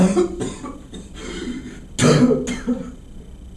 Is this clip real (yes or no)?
yes